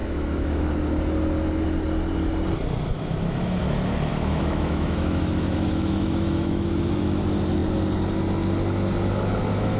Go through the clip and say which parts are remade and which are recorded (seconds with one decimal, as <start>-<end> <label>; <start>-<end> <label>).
0.0-0.7 remade; 0.7-2.9 recorded; 2.9-3.6 remade; 3.6-4.1 recorded; 4.1-7.0 remade; 7.0-9.8 recorded